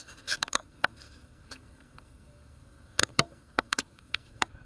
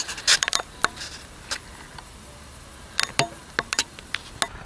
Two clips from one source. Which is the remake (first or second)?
first